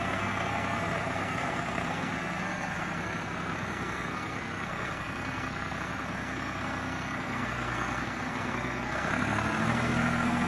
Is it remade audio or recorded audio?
remade